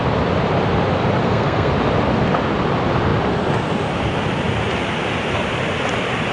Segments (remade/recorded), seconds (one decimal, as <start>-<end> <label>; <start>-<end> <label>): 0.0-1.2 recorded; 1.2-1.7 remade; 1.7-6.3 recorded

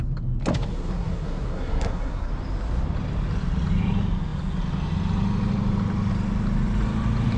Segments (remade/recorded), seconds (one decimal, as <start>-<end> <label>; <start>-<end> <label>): 0.0-0.7 recorded; 0.7-2.3 remade; 2.3-7.4 recorded

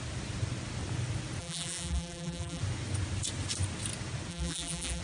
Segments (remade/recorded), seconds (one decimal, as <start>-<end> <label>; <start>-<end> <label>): 0.0-1.4 recorded; 1.4-2.6 remade; 2.6-4.3 recorded; 4.3-5.0 remade

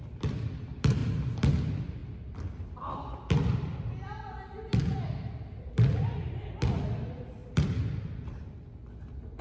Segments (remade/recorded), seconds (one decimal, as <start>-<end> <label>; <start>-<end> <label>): 0.0-9.4 recorded